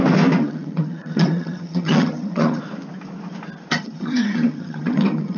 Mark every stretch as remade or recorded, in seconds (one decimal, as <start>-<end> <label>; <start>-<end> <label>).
0.0-0.4 recorded; 0.4-2.6 remade; 2.6-3.7 recorded; 3.7-5.4 remade